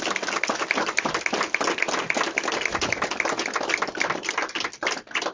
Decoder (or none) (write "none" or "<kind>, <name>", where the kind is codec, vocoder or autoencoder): none